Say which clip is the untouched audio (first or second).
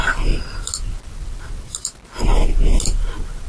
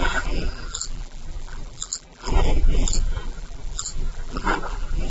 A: first